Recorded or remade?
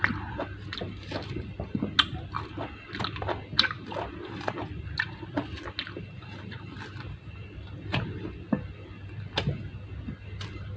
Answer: recorded